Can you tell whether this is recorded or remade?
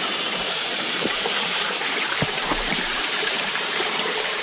remade